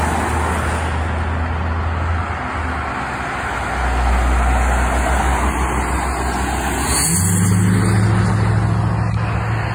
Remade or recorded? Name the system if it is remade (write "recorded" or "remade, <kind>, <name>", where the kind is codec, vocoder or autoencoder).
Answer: recorded